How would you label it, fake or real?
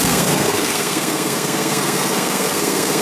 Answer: fake